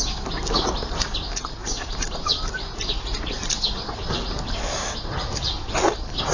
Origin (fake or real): fake